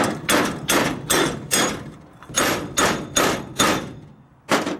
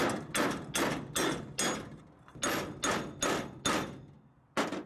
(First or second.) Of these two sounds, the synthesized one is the first